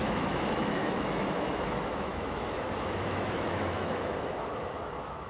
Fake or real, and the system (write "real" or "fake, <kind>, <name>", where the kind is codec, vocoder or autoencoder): fake, autoencoder, DAC-VAE